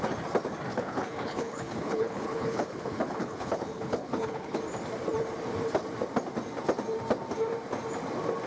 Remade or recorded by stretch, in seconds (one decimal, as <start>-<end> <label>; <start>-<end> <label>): 0.0-0.7 recorded; 0.7-4.6 remade; 4.6-8.5 recorded